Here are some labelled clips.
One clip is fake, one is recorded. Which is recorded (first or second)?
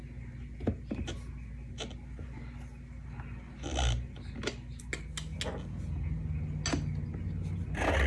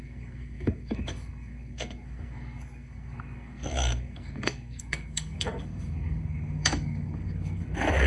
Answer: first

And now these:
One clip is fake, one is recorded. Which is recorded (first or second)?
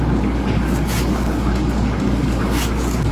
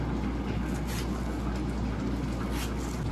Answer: second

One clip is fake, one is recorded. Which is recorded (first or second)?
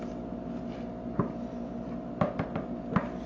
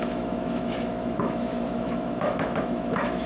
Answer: first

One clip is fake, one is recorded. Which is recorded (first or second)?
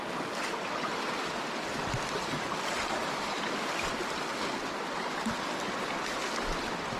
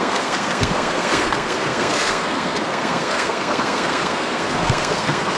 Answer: first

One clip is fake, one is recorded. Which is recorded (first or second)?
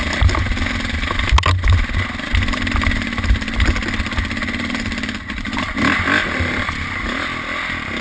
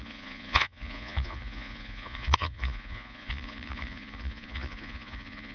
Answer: first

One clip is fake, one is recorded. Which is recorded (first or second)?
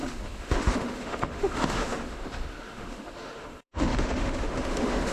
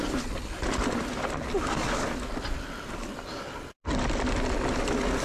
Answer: second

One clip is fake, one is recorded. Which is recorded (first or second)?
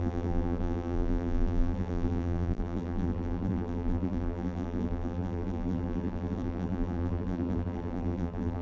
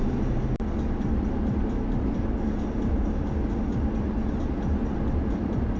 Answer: second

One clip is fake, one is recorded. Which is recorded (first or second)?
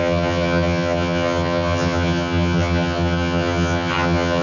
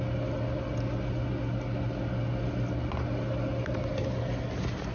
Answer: second